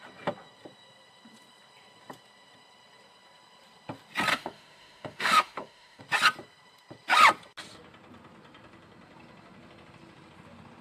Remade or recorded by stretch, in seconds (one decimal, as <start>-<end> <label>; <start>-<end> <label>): 0.0-4.3 recorded; 4.3-6.0 remade; 6.0-10.8 recorded